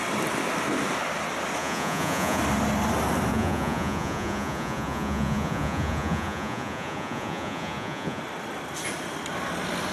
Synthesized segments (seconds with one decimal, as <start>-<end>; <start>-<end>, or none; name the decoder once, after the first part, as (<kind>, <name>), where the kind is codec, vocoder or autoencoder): 1.6-2.4 (vocoder, Vocos); 3.3-8.2